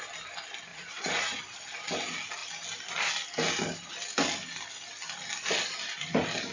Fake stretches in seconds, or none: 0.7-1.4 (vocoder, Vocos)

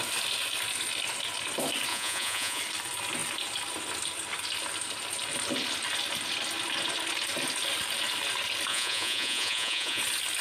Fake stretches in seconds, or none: 1.9-2.6 (vocoder, Vocos); 8.7-10.0

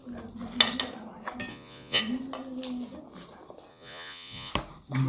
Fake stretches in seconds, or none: 1.5-2.0 (vocoder, Vocos); 3.7-4.5

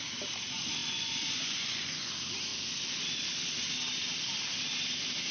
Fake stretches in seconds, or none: 0.8-2.1 (vocoder, Vocos)

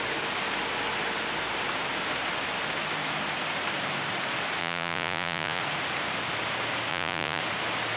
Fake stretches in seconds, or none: 4.6-5.6 (vocoder, Vocos); 6.9-7.4

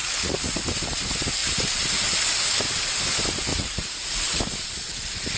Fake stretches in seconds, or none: 0.0-0.6 (vocoder, Vocos); 3.5-4.4

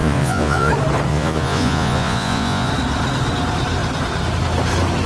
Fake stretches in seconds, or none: 0.0-0.7 (vocoder, Vocos); 1.1-2.7